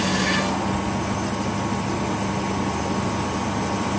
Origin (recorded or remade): recorded